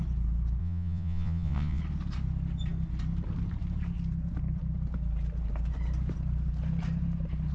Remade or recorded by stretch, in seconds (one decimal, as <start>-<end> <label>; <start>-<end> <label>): 0.0-0.6 recorded; 0.6-1.8 remade; 1.8-7.5 recorded